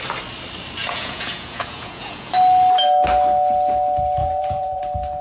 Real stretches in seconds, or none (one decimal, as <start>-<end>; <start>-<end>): 0.0-0.8; 2.3-4.2; 4.8-5.2